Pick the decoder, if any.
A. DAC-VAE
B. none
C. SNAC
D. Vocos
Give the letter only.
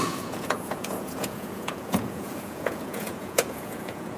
D